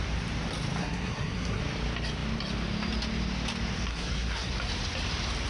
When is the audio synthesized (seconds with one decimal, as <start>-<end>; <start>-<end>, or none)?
0.8-1.6; 3.9-4.5